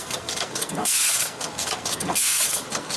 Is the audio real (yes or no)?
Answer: no